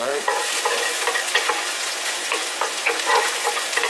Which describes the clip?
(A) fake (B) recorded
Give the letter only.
A